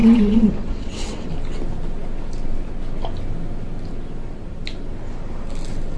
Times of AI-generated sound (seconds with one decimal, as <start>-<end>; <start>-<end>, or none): 0.0-1.3